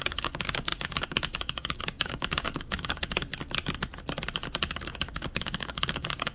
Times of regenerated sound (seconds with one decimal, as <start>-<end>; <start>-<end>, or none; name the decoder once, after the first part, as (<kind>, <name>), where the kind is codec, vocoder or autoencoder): 0.0-3.3 (codec, DAC); 4.7-6.3